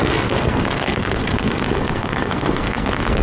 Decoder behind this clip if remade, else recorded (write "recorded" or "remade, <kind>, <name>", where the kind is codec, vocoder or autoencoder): remade, codec, SNAC